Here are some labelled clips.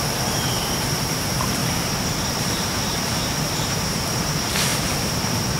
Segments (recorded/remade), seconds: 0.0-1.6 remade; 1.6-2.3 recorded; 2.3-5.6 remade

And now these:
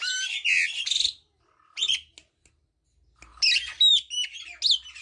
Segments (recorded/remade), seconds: 0.0-5.0 recorded

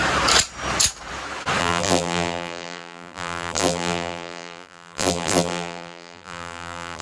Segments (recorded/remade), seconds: 0.0-1.6 recorded; 1.6-7.0 remade

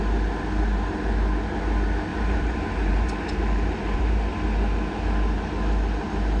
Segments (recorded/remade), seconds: 0.0-2.1 recorded; 2.1-4.3 remade; 4.3-6.4 recorded

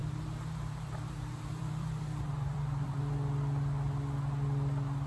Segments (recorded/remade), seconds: 0.0-3.1 remade; 3.1-5.1 recorded

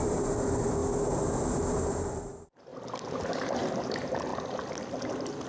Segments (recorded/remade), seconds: 0.0-0.8 remade; 0.8-1.5 recorded; 1.5-2.7 remade; 2.7-3.2 recorded; 3.2-4.3 remade; 4.3-5.5 recorded

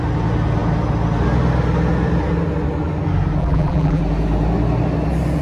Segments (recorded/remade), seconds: 0.0-3.4 recorded; 3.4-4.0 remade; 4.0-5.4 recorded

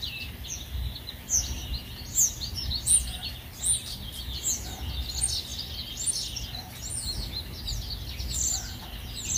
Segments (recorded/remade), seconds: 0.0-9.4 recorded